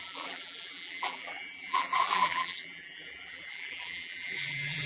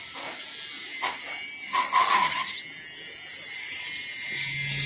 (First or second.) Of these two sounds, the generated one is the first